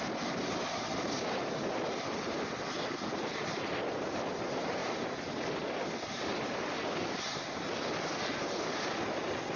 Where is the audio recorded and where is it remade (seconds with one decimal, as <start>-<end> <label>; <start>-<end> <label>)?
0.0-9.6 recorded